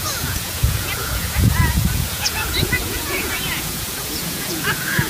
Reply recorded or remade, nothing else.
remade